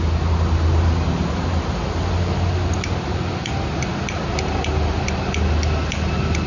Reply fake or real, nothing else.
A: real